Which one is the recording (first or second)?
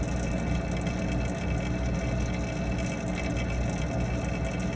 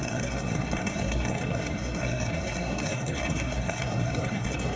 first